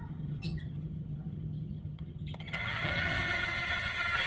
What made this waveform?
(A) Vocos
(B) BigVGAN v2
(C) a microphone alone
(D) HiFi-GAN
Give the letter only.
D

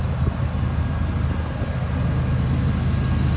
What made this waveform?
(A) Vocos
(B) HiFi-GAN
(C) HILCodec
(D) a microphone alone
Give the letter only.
D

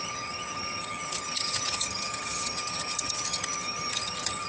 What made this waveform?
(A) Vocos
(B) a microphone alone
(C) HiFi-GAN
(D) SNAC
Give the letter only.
C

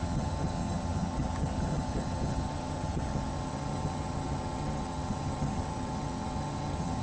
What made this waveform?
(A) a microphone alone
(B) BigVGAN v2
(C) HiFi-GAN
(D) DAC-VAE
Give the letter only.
C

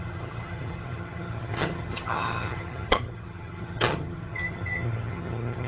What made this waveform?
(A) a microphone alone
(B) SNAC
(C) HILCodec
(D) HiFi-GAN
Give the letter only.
D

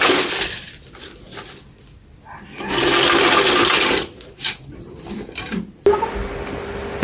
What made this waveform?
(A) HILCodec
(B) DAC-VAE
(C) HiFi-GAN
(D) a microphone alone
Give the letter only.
D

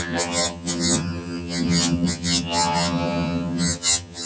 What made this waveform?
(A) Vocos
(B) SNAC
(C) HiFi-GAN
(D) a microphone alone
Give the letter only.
C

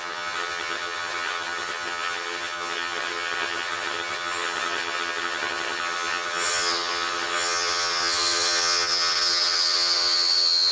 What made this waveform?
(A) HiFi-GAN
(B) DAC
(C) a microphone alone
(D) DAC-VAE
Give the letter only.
A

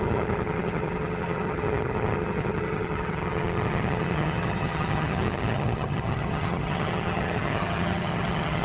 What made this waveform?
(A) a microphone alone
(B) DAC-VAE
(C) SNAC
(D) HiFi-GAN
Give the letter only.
D